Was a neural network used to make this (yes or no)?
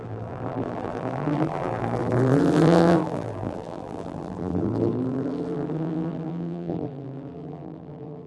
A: yes